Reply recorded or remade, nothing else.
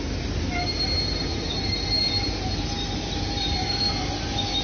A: recorded